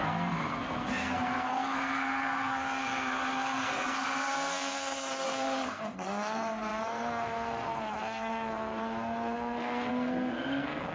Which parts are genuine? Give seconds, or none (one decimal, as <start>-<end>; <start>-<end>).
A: none